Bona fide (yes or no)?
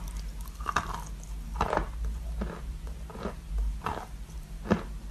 yes